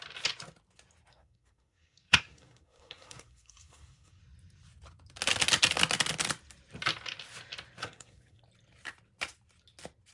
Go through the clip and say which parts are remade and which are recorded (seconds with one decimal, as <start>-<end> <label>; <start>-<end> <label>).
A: 0.0-1.1 recorded; 1.1-4.2 remade; 4.2-7.8 recorded; 7.8-8.4 remade; 8.4-10.1 recorded